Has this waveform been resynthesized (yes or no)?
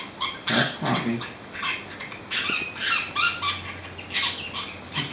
no